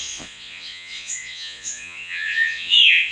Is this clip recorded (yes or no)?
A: no